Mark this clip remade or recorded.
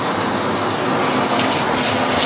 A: recorded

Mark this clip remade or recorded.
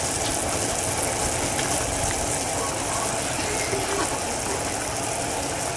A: recorded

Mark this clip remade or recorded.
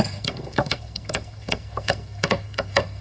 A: remade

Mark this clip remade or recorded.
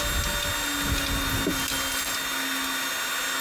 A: recorded